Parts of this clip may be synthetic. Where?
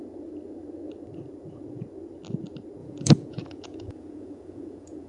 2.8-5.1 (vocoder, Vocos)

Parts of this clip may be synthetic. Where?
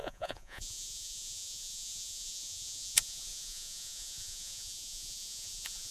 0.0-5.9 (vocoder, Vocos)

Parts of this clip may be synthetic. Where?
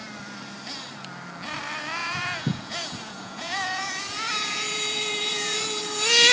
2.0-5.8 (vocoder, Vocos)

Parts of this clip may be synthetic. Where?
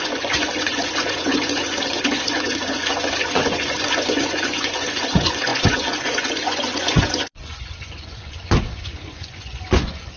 0.0-10.2 (vocoder, Vocos)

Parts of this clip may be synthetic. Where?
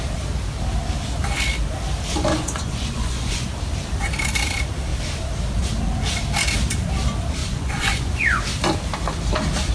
2.3-3.5 (vocoder, Vocos); 7.4-8.4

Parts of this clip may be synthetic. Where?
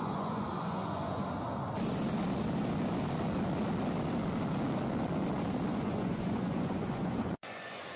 0.0-1.2 (vocoder, Vocos); 5.7-8.0